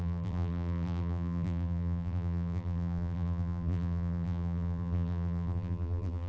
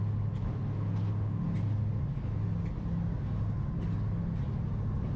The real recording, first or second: second